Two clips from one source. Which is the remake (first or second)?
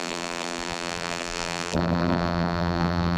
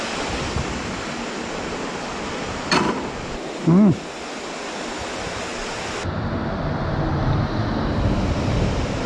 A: first